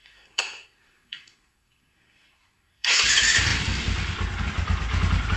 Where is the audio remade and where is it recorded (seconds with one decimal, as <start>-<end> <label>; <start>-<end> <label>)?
0.0-3.0 remade; 3.0-5.4 recorded